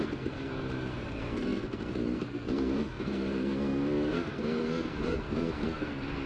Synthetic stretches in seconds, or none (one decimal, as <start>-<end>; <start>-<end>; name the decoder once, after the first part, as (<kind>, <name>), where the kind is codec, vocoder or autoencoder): 0.0-6.3 (codec, SNAC)